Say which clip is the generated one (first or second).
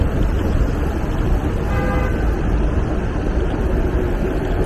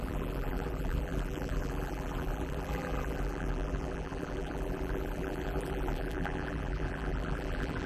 second